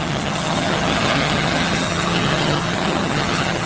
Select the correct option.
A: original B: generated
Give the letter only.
B